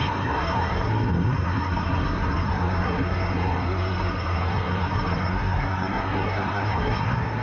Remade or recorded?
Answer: remade